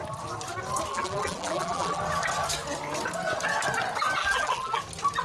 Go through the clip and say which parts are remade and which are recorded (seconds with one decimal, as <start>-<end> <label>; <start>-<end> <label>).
0.0-0.9 recorded; 0.9-2.0 remade; 2.0-4.2 recorded; 4.2-4.8 remade; 4.8-5.2 recorded